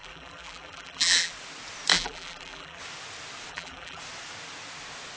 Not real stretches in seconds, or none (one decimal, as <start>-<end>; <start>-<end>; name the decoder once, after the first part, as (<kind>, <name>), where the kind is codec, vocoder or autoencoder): 0.0-1.3 (vocoder, BigVGAN v2); 1.9-2.8; 3.5-4.0